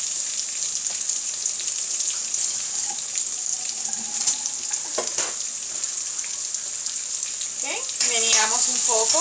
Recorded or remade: recorded